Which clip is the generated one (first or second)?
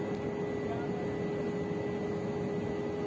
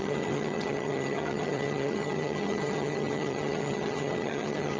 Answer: second